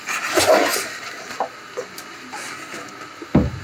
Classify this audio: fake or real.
real